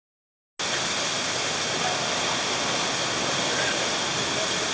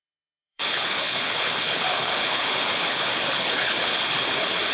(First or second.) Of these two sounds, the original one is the first